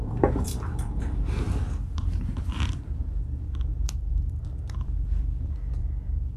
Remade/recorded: remade